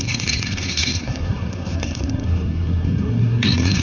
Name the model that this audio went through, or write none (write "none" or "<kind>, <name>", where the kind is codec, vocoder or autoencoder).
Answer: codec, SNAC